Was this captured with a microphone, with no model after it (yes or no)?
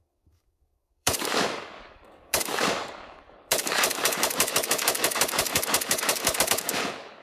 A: no